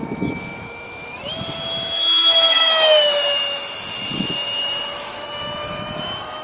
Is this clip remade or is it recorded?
remade